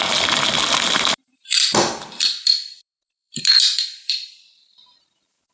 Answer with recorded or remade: remade